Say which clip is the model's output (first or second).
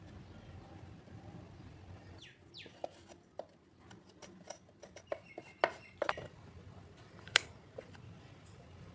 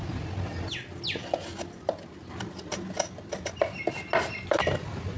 first